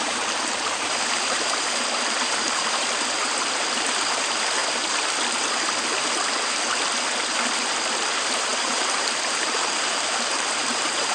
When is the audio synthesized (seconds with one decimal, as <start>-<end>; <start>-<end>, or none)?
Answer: 0.0-4.6; 8.1-11.1